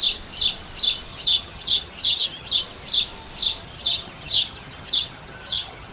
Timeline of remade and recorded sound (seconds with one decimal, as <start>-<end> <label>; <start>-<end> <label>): 0.0-1.1 recorded; 1.1-2.6 remade; 2.6-3.6 recorded; 3.6-5.9 remade